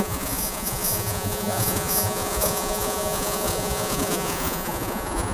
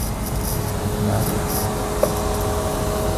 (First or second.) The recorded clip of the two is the second